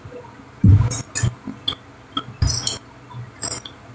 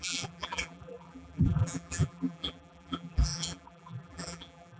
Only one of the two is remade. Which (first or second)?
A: second